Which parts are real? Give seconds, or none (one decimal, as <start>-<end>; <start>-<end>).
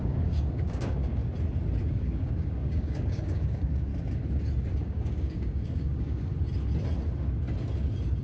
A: 1.2-1.8; 3.9-4.8; 6.3-8.2